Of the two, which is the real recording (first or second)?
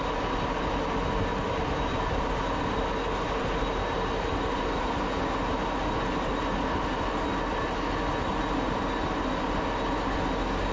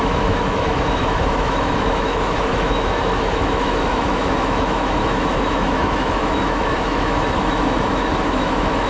first